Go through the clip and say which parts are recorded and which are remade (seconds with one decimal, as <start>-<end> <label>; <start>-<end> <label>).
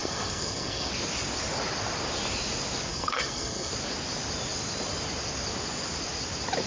0.0-0.9 remade; 0.9-2.9 recorded; 2.9-3.7 remade; 3.7-6.7 recorded